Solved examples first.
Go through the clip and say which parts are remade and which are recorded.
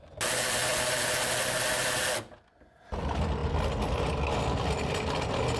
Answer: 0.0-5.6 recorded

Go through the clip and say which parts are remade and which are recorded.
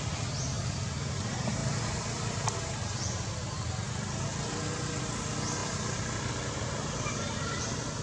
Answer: 0.0-8.0 recorded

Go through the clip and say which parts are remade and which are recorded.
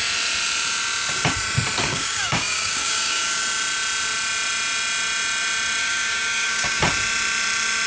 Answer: 0.0-1.9 recorded; 1.9-3.4 remade; 3.4-5.8 recorded; 5.8-6.8 remade; 6.8-7.9 recorded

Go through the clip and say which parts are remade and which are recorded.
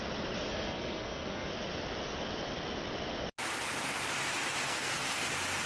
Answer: 0.0-0.5 recorded; 0.5-1.5 remade; 1.5-4.6 recorded; 4.6-5.3 remade; 5.3-5.7 recorded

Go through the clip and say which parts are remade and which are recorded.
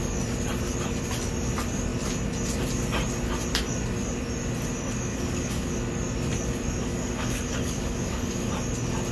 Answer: 0.0-5.1 recorded; 5.1-5.7 remade; 5.7-6.9 recorded; 6.9-8.5 remade; 8.5-9.1 recorded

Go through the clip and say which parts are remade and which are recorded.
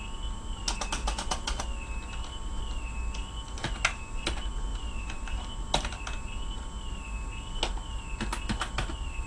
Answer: 0.0-1.0 recorded; 1.0-1.6 remade; 1.6-4.7 recorded; 4.7-5.6 remade; 5.6-9.3 recorded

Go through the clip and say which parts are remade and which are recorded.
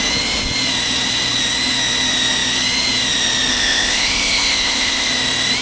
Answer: 0.0-3.5 recorded; 3.5-5.1 remade; 5.1-5.6 recorded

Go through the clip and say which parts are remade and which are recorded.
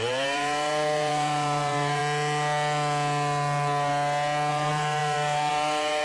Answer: 0.0-2.0 remade; 2.0-4.5 recorded; 4.5-6.0 remade